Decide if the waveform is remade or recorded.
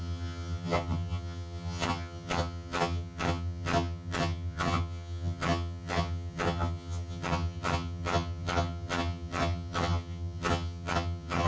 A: remade